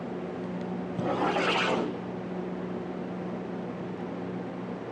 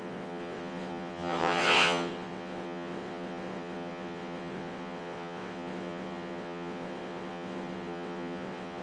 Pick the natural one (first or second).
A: first